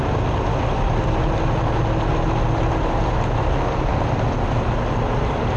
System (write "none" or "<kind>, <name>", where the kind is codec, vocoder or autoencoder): none